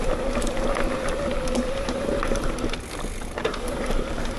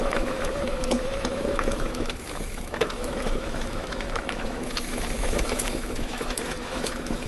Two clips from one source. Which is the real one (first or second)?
first